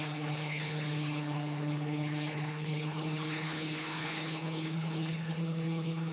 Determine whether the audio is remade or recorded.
remade